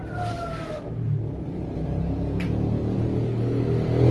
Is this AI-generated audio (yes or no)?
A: no